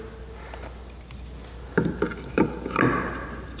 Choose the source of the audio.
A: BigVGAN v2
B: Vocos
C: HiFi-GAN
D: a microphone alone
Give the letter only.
D